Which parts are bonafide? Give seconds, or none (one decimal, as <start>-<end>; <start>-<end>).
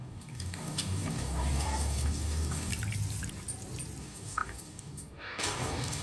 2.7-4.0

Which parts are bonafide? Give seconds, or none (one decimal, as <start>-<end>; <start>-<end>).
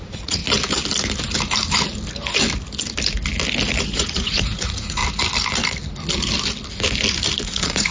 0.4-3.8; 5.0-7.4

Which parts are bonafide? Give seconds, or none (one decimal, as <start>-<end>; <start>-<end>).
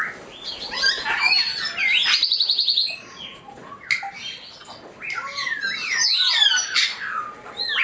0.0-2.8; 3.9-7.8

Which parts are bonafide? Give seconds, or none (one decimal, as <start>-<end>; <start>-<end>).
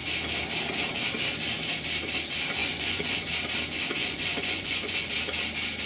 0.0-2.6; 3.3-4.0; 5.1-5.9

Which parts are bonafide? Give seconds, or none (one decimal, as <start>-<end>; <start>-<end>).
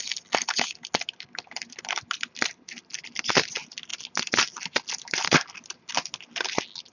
0.0-6.9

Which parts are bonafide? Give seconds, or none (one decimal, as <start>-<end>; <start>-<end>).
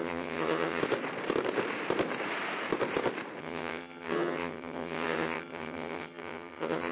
0.8-3.4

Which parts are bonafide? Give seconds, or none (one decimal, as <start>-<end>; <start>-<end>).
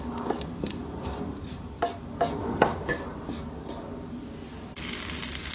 0.0-2.4; 2.9-5.5